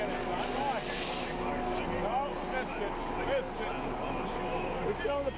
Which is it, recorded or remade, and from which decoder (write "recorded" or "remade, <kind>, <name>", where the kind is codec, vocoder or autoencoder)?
recorded